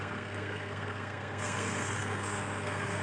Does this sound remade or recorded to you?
remade